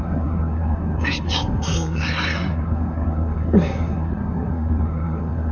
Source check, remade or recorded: remade